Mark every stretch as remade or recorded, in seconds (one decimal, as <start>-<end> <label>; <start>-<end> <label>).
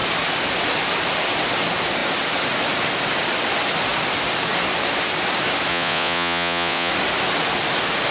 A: 0.0-5.7 recorded; 5.7-6.9 remade; 6.9-8.1 recorded